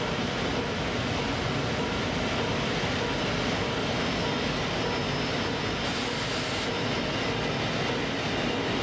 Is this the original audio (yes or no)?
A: yes